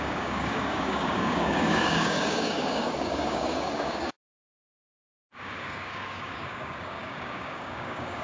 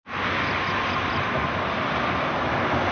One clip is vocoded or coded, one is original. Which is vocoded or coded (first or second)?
first